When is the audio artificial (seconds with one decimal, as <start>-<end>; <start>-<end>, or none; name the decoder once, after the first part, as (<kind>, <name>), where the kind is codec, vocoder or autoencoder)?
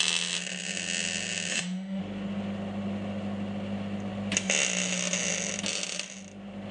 1.5-2.0 (autoencoder, DAC-VAE)